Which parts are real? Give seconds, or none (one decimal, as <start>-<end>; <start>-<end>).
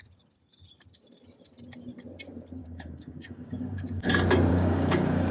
0.0-2.6; 4.1-4.5